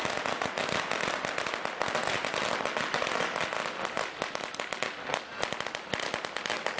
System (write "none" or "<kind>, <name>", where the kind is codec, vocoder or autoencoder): none